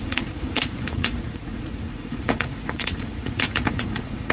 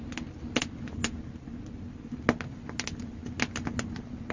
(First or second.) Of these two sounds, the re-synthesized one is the first